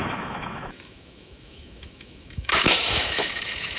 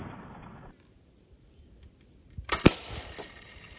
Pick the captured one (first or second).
second